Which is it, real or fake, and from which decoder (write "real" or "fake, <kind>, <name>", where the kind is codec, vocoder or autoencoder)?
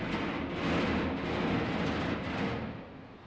real